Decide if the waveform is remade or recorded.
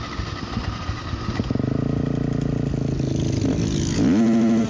recorded